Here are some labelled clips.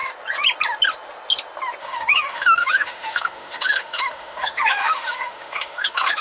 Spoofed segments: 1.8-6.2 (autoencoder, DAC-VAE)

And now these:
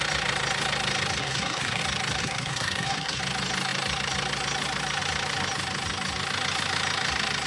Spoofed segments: 1.2-1.8 (codec, SNAC); 2.2-3.2